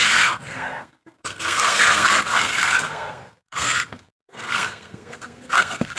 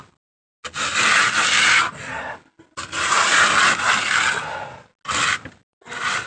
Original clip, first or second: second